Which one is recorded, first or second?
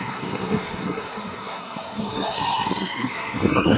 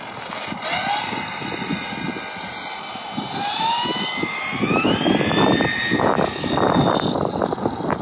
second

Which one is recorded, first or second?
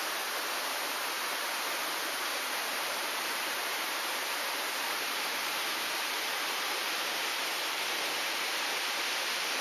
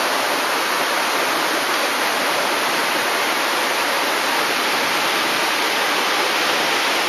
second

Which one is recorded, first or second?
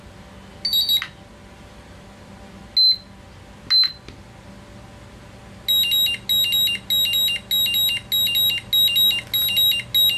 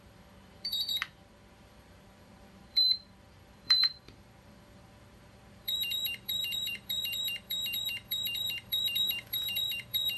first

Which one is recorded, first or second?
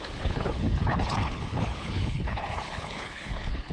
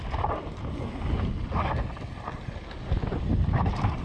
second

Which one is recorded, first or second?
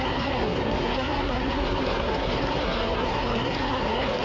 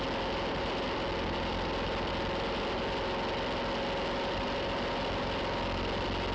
second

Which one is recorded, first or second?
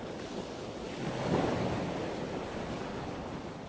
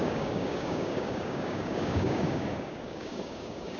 first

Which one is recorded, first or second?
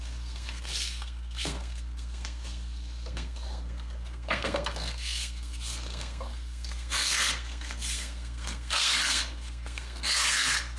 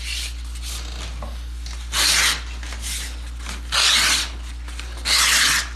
second